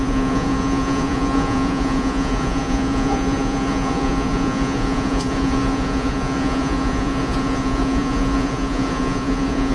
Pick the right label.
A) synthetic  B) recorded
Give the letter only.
A